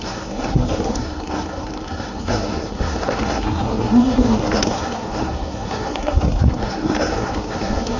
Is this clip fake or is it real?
fake